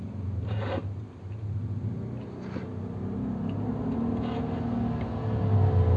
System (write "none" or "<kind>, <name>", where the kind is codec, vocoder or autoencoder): none